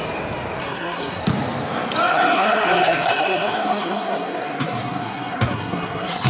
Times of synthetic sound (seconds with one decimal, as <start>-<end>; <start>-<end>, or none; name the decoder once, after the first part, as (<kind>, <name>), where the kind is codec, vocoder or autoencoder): 0.6-1.2 (codec, SNAC); 2.1-6.3